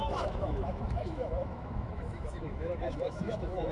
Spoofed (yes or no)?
yes